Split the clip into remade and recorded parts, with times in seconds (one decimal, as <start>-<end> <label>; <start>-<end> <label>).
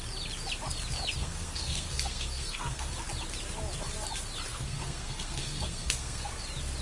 0.0-1.2 recorded; 1.2-2.9 remade; 2.9-4.5 recorded; 4.5-6.3 remade; 6.3-6.8 recorded